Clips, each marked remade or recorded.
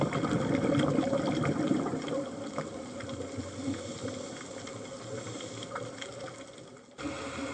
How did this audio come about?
recorded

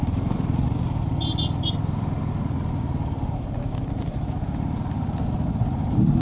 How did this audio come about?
recorded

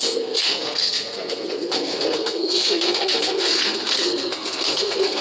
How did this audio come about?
remade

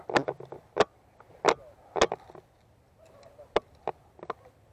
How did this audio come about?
recorded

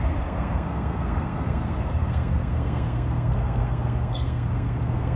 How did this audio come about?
remade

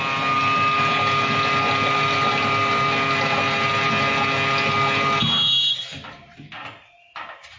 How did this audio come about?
recorded